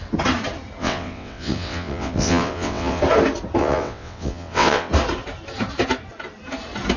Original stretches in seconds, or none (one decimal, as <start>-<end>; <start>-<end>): 0.0-0.8; 3.0-3.6; 4.9-7.0